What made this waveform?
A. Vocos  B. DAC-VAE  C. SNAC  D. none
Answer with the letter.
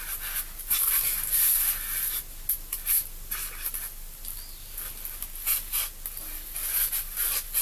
D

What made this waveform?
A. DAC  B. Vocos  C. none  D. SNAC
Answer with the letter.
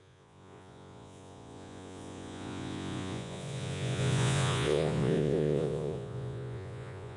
B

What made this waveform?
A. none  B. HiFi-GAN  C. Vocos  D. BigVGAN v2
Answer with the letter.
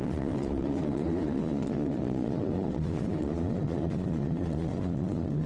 C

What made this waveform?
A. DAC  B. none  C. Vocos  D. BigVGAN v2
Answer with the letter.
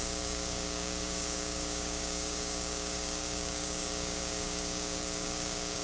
A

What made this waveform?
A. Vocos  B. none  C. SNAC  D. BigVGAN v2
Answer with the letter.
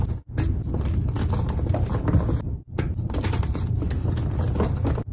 B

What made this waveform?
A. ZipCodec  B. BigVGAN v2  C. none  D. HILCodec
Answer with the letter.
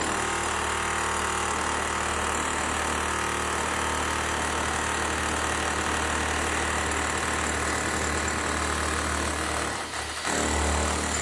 C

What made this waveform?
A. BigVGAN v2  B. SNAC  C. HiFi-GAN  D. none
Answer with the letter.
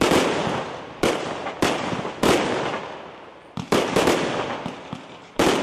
D